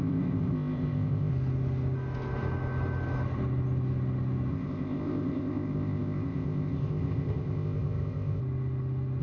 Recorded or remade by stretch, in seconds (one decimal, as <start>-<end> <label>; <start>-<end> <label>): 0.0-1.3 remade; 1.3-4.5 recorded; 4.5-8.4 remade; 8.4-9.2 recorded